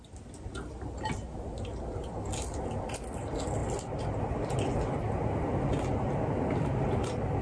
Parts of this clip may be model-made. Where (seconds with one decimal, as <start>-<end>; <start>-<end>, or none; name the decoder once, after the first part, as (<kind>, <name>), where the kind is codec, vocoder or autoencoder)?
none

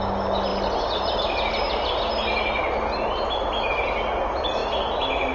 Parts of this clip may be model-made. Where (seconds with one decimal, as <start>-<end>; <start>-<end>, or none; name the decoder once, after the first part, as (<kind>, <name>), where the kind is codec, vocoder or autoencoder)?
none

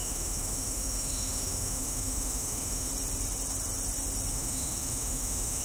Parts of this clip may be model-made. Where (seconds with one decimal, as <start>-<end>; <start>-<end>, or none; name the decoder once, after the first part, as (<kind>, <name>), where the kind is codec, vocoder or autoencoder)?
0.0-2.9 (autoencoder, DAC-VAE); 4.3-5.6